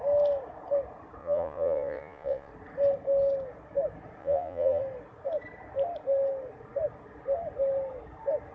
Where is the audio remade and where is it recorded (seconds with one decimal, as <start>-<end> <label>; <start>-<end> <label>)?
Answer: 0.0-1.2 recorded; 1.2-2.5 remade; 2.5-4.2 recorded; 4.2-4.8 remade; 4.8-8.5 recorded

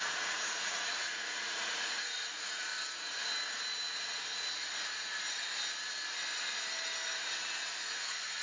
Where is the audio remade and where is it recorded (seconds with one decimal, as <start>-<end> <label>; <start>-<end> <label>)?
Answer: 0.0-2.7 remade; 2.7-7.4 recorded; 7.4-8.4 remade

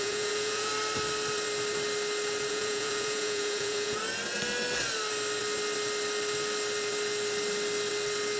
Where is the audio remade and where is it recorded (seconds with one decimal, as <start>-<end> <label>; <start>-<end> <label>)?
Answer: 0.0-0.7 remade; 0.7-2.5 recorded; 2.5-4.0 remade; 4.0-8.4 recorded

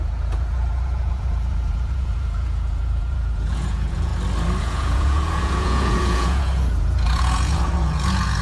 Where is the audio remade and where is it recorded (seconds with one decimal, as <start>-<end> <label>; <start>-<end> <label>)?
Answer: 0.0-4.1 remade; 4.1-4.6 recorded; 4.6-8.4 remade

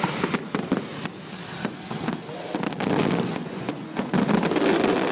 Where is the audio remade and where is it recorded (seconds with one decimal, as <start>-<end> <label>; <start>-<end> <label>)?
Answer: 0.0-3.3 recorded; 3.3-4.1 remade; 4.1-5.1 recorded

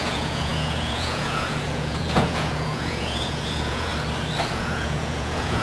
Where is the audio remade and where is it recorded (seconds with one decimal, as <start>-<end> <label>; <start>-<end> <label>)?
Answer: 0.0-3.9 remade; 3.9-4.5 recorded; 4.5-5.6 remade

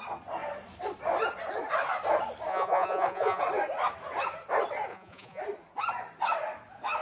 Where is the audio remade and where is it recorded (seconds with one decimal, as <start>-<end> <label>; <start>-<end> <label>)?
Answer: 0.0-2.5 recorded; 2.5-3.4 remade; 3.4-4.9 recorded; 4.9-5.4 remade; 5.4-7.0 recorded

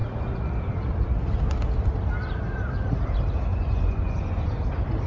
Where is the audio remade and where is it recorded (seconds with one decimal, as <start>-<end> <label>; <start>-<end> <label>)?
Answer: 0.0-3.5 recorded; 3.5-4.5 remade; 4.5-5.1 recorded